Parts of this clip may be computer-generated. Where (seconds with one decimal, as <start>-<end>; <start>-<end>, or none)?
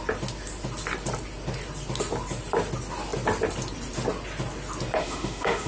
5.0-5.7